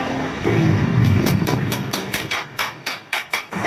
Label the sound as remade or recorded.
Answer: remade